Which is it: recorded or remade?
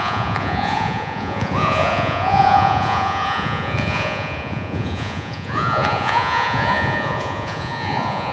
remade